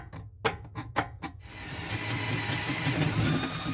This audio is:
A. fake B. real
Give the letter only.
B